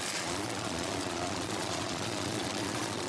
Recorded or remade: remade